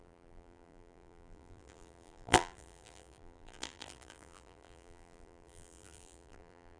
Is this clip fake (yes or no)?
yes